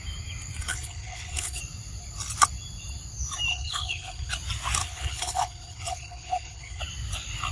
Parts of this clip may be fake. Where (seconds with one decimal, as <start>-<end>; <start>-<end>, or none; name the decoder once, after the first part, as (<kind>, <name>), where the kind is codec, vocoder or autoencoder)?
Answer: 0.7-1.6 (codec, HILCodec); 3.5-4.3; 4.8-6.8

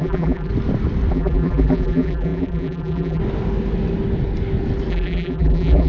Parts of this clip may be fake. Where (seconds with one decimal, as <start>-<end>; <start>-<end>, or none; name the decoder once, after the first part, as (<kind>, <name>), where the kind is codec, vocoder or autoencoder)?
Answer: 0.0-0.5 (vocoder, BigVGAN v2); 1.1-3.2; 4.9-5.9

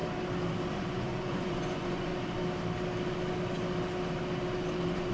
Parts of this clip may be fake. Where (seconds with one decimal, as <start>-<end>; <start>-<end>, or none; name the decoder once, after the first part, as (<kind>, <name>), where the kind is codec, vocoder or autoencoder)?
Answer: 0.7-2.1 (vocoder, Vocos)

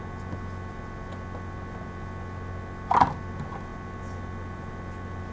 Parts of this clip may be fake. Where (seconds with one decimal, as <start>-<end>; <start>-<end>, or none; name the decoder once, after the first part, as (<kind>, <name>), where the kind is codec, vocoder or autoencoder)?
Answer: none

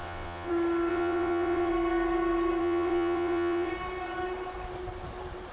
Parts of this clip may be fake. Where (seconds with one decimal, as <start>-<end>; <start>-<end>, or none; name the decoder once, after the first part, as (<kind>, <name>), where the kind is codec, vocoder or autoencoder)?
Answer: 0.0-0.5 (vocoder, WaveNeXt); 0.9-1.7; 2.6-3.7

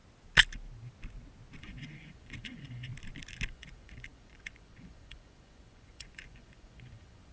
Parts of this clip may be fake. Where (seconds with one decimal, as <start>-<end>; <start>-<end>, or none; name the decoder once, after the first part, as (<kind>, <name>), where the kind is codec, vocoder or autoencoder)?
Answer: 1.6-2.9 (vocoder, Vocos); 3.5-7.3

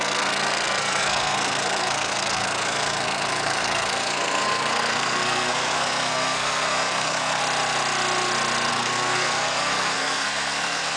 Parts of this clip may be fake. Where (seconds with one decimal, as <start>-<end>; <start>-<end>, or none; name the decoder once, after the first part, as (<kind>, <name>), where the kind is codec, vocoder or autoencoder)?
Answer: 0.0-7.4 (codec, SNAC); 8.7-11.0